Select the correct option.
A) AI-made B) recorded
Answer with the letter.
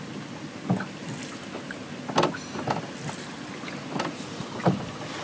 B